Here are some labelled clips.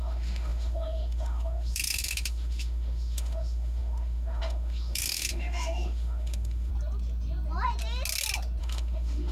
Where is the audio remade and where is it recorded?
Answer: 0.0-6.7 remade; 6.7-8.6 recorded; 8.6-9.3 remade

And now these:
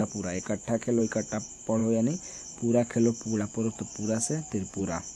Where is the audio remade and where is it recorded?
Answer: 0.0-1.0 remade; 1.0-5.2 recorded